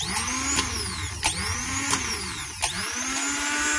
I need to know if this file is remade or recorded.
recorded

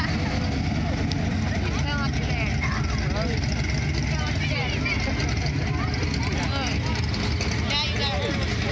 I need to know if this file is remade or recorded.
recorded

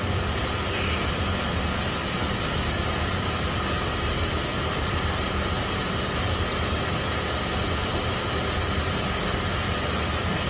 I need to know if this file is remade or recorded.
recorded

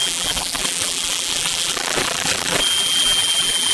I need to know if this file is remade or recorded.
remade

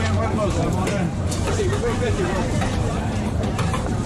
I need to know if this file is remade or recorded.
remade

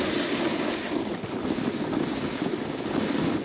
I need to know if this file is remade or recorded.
recorded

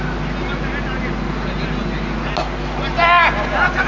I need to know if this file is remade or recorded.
recorded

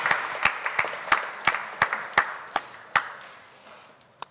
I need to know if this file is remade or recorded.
recorded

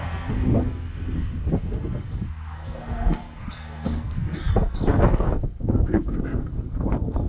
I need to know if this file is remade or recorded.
remade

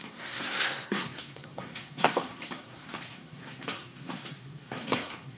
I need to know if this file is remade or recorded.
remade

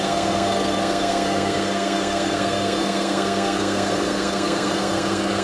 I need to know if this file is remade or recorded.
remade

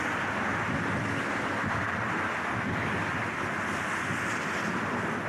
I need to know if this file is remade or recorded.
recorded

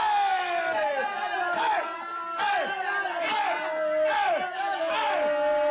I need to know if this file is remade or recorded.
recorded